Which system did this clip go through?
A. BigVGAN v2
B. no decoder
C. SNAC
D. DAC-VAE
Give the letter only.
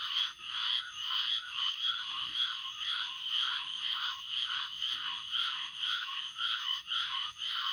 D